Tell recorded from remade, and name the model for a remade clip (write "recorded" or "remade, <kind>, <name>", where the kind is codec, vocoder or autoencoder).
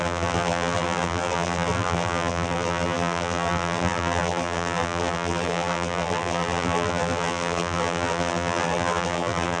remade, vocoder, BigVGAN v2